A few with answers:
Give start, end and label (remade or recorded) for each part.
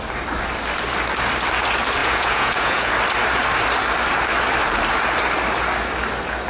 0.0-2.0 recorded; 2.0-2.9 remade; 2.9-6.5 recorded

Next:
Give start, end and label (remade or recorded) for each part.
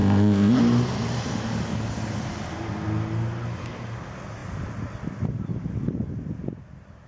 0.0-0.6 remade; 0.6-7.1 recorded